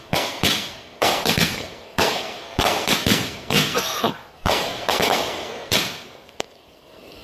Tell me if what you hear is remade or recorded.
remade